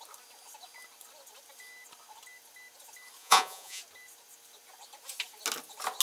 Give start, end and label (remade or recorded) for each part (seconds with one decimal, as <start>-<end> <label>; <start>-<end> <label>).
0.0-3.2 recorded; 3.2-3.8 remade; 3.8-6.0 recorded